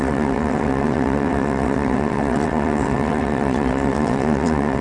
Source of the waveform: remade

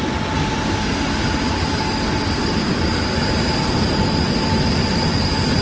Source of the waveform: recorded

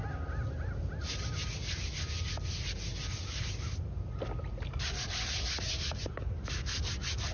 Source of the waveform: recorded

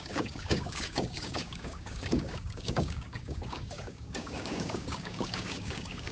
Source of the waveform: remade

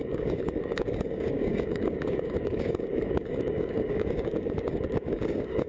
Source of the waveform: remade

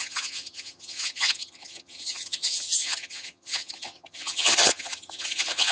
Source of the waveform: remade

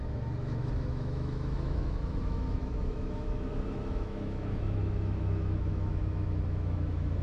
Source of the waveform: remade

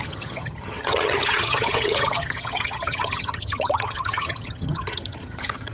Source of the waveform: remade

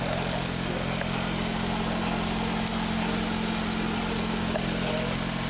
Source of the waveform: recorded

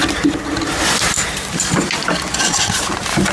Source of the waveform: recorded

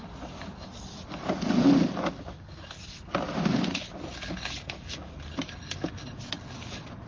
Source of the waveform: recorded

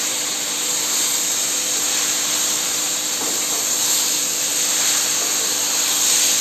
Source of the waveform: remade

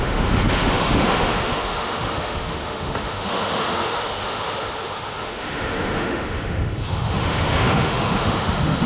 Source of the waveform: remade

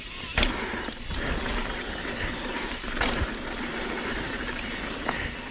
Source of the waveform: recorded